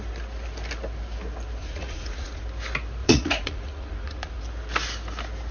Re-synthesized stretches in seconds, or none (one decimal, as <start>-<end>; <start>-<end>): 1.6-2.4; 3.0-4.4